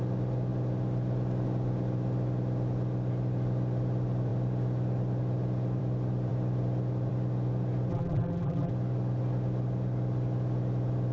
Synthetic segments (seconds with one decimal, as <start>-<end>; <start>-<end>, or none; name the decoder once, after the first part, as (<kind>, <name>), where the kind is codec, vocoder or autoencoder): 7.9-8.7 (vocoder, BigVGAN v2)

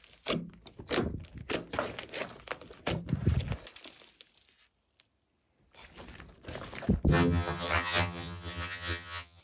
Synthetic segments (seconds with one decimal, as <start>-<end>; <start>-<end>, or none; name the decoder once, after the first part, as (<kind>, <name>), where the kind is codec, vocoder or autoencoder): 7.1-9.4 (vocoder, HiFi-GAN)

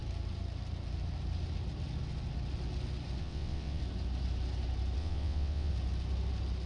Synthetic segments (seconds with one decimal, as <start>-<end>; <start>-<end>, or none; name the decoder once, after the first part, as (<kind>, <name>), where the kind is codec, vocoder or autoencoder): 3.2-3.8 (vocoder, WaveNeXt); 5.0-5.7

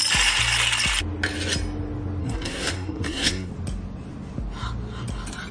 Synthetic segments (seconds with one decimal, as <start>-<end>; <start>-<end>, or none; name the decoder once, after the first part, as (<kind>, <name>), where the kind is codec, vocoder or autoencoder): 2.2-3.5 (codec, SNAC)

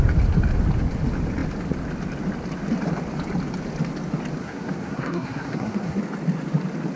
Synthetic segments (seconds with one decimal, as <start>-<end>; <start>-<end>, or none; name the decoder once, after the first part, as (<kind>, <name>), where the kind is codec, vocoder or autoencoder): 4.4-6.0 (codec, SNAC)